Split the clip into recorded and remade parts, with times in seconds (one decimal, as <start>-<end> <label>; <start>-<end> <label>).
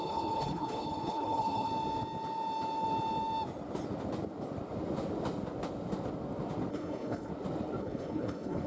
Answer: 0.0-1.7 remade; 1.7-6.7 recorded; 6.7-7.3 remade; 7.3-7.8 recorded; 7.8-8.7 remade